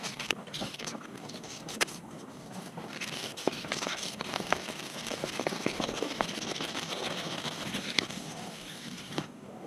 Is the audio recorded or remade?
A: remade